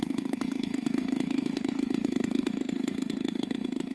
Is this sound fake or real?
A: fake